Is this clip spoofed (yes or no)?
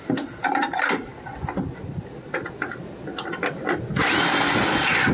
no